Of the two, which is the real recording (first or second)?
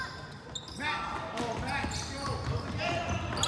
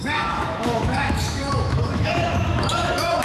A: first